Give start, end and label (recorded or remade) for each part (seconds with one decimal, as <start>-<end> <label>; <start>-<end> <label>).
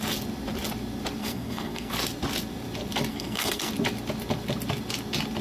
0.0-1.2 recorded; 1.2-1.9 remade; 1.9-3.1 recorded; 3.1-3.7 remade; 3.7-5.4 recorded